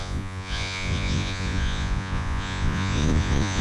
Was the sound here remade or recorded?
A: remade